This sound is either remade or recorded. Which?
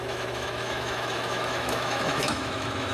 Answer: remade